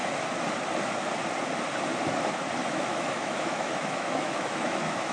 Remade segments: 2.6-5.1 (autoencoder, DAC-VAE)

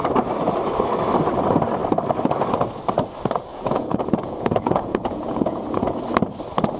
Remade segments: 3.5-6.0 (vocoder, Vocos)

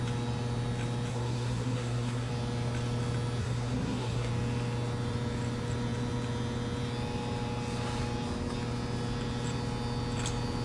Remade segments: 1.1-2.3 (codec, SNAC); 3.4-4.3

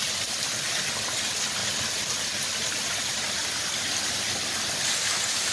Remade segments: none

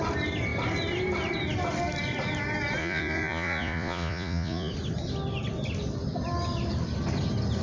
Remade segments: 2.8-4.7 (vocoder, Vocos)

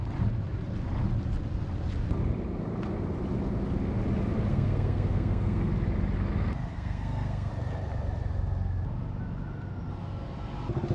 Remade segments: 4.5-5.7 (codec, SNAC); 6.7-7.5

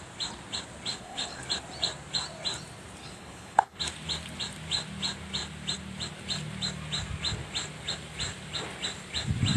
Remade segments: 0.9-1.4 (codec, HILCodec); 3.0-3.8

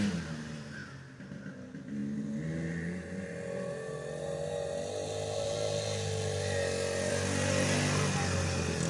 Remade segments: none